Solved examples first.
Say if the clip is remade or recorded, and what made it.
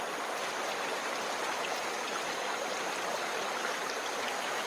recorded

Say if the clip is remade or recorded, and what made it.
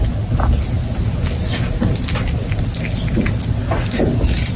recorded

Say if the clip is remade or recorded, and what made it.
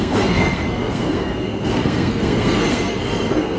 remade, codec, SNAC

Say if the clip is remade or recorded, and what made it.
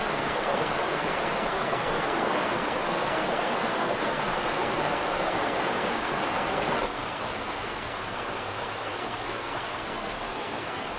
remade, codec, SNAC